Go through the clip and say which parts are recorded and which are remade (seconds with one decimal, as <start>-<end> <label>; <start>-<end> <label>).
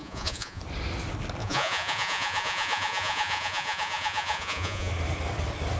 0.0-0.6 remade; 0.6-1.4 recorded; 1.4-4.9 remade; 4.9-5.8 recorded